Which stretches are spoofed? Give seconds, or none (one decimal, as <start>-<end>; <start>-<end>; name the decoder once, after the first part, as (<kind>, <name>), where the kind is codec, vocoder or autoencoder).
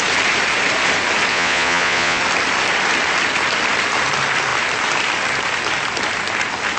1.3-2.2 (vocoder, Vocos)